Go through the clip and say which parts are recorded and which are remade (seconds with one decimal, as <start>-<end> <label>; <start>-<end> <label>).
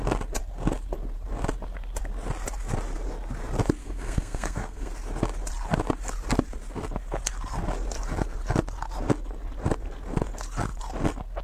0.0-3.8 recorded; 3.8-4.9 remade; 4.9-11.4 recorded